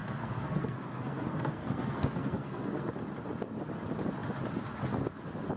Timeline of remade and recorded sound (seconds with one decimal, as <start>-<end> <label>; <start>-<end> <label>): 0.0-2.9 remade; 2.9-5.6 recorded